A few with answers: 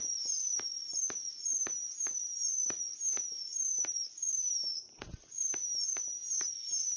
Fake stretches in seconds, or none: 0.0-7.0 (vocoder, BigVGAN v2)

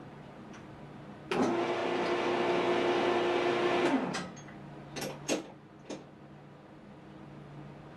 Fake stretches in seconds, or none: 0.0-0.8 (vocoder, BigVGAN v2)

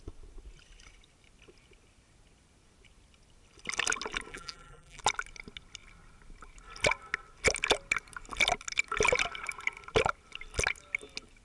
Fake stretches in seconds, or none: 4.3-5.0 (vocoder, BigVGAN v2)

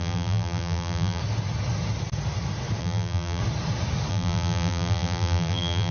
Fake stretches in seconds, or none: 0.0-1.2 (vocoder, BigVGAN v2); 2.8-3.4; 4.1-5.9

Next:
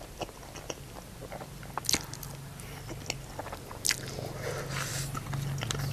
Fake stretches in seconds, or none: none

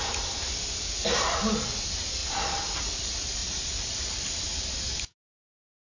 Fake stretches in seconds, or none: 2.2-2.8 (vocoder, BigVGAN v2); 3.4-4.5

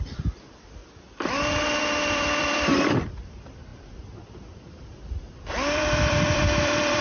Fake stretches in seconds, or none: 0.0-0.8 (vocoder, BigVGAN v2); 1.8-3.7; 5.3-7.0

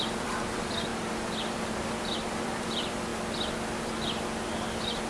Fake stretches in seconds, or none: 0.0-3.1 (vocoder, BigVGAN v2)